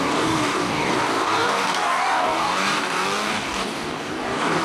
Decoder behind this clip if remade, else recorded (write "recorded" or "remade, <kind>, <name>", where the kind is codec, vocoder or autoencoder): remade, codec, DAC